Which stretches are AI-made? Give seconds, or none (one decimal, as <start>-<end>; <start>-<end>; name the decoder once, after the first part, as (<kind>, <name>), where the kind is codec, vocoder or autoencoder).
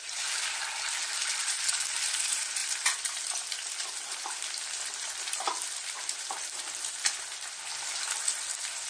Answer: none